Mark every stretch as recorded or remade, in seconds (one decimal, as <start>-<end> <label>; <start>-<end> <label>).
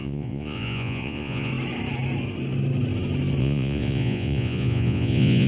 0.0-1.5 remade; 1.5-3.4 recorded; 3.4-5.5 remade